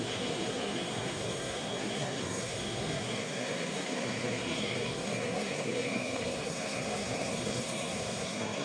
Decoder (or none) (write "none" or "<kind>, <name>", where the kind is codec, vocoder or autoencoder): codec, SNAC